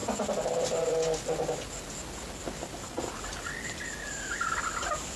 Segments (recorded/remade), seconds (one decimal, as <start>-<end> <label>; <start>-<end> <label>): 0.0-5.2 recorded